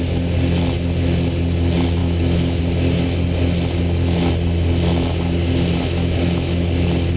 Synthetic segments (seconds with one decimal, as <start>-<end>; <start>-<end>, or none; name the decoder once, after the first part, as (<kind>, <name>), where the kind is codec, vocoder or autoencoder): 2.0-2.6 (autoencoder, DAC-VAE)